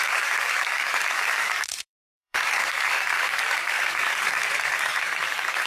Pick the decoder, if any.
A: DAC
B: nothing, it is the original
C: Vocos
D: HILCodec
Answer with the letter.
A